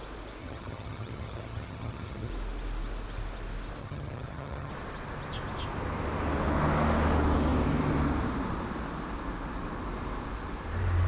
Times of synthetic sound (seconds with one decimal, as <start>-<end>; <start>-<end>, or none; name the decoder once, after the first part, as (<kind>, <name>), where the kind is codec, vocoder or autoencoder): 0.4-2.3 (vocoder, HiFi-GAN); 3.8-4.7